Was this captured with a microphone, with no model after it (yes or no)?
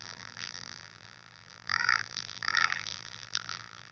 no